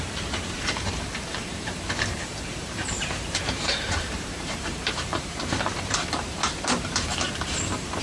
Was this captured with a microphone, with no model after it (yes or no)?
no